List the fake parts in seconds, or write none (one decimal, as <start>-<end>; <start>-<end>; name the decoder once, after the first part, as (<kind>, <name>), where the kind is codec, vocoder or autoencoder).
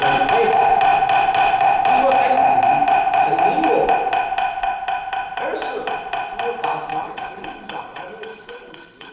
6.9-9.1 (codec, HILCodec)